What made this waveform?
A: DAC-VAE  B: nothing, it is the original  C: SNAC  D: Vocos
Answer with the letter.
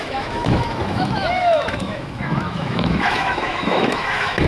A